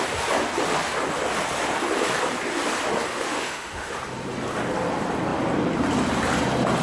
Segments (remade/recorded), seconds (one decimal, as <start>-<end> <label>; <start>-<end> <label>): 0.0-3.1 recorded; 3.1-3.9 remade; 3.9-6.8 recorded